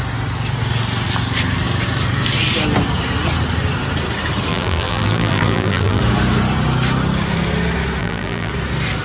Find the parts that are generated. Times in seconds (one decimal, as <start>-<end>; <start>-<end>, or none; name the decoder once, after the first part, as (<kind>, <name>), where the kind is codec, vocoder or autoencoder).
4.5-6.0 (vocoder, BigVGAN v2); 8.0-8.5